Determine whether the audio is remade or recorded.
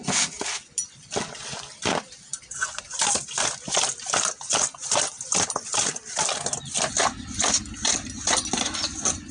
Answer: recorded